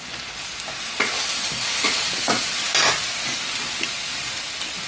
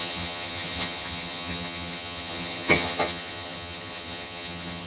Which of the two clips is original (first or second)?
first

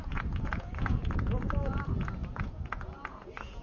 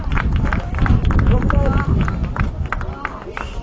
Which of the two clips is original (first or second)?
second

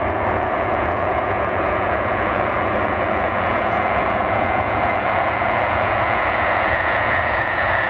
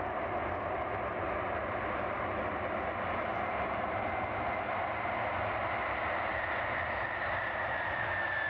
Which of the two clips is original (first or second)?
second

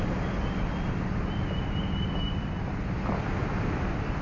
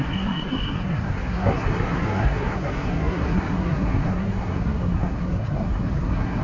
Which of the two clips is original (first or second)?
first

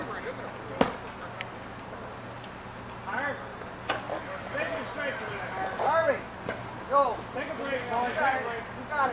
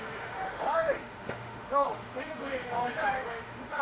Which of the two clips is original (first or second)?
first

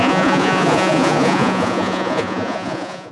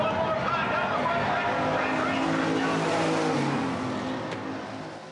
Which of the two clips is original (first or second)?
second